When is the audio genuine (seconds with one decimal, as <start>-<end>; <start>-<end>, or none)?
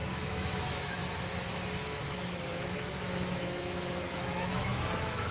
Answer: 1.0-1.8